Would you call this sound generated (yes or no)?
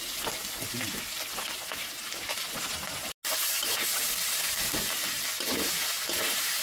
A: no